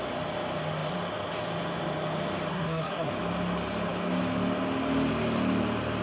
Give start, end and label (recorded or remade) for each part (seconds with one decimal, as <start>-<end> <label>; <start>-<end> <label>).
0.0-2.5 recorded; 2.5-3.1 remade; 3.1-6.0 recorded